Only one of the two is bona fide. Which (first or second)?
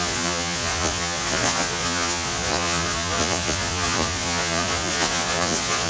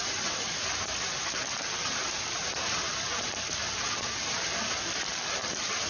second